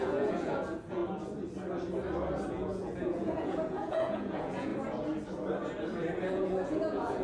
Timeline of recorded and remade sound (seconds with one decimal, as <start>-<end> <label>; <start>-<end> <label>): 0.0-1.0 remade; 1.0-2.5 recorded; 2.5-4.7 remade; 4.7-6.3 recorded; 6.3-7.2 remade